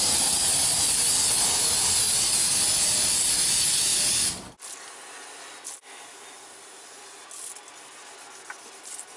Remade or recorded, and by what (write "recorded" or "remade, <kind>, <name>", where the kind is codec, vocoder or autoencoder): recorded